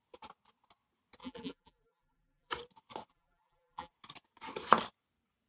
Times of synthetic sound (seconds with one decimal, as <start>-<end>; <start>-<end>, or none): 1.2-2.5; 3.1-3.9